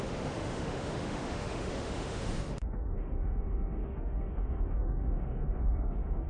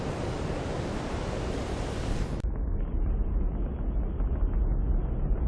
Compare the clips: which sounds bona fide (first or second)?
second